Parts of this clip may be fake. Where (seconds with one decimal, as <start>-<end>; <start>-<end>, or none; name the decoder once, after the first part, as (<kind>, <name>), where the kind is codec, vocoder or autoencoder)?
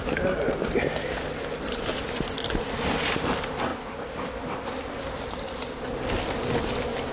none